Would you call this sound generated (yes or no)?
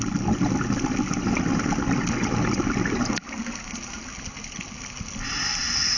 no